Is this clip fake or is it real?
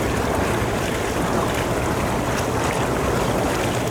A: real